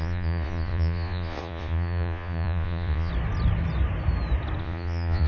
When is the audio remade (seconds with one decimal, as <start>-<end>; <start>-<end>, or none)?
0.0-3.1; 4.6-5.3

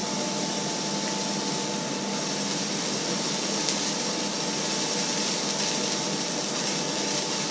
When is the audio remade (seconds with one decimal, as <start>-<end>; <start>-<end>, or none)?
none

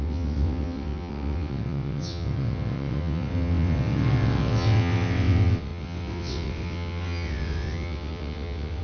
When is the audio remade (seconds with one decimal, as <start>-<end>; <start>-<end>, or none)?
0.0-8.8

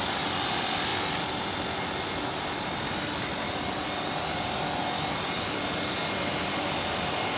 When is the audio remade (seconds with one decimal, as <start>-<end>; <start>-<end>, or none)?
none

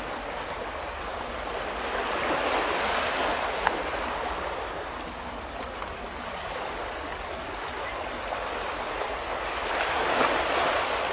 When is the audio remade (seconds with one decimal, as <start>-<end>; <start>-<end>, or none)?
none

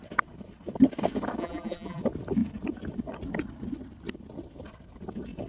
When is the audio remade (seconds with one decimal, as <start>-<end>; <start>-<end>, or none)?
1.4-2.0

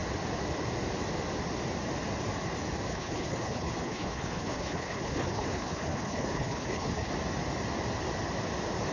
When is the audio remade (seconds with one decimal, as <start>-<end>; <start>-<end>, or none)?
2.9-7.1

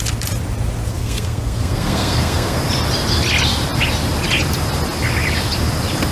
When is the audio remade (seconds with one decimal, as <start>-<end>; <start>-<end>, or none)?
0.9-2.6